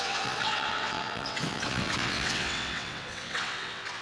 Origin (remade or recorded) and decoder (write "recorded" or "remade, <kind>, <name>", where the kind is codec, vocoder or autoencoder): remade, vocoder, WaveNeXt